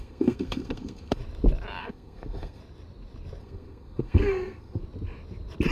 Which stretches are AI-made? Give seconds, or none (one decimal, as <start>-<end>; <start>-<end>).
0.0-1.2; 1.8-2.6; 3.4-4.8